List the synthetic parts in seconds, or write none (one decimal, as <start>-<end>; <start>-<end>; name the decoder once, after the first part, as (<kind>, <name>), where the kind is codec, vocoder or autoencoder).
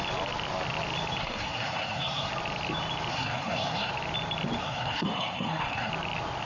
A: 1.2-2.3 (codec, SNAC); 3.1-3.9; 4.6-5.9